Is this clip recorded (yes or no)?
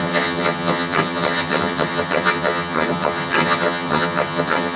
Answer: no